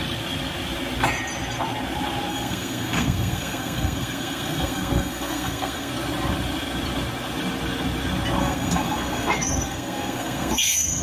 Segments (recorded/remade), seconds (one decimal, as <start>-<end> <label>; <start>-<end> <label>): 0.0-2.3 recorded; 2.3-5.9 remade; 5.9-8.4 recorded; 8.4-11.0 remade